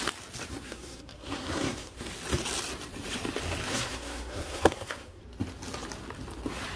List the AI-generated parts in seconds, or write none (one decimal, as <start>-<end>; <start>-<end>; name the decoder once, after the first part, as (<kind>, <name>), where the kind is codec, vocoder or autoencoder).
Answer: 0.5-2.1 (codec, SNAC); 3.7-5.2